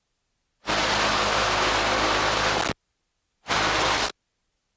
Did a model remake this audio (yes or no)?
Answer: no